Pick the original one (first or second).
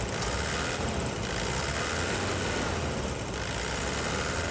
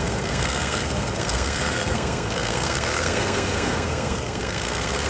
first